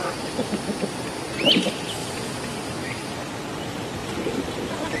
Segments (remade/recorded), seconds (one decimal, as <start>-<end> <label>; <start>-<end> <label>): 0.0-5.0 recorded